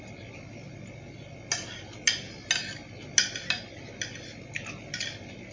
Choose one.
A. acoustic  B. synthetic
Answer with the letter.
A